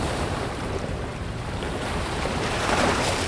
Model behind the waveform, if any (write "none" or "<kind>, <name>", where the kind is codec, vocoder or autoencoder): vocoder, BigVGAN v2